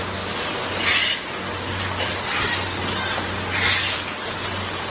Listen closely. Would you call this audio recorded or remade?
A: recorded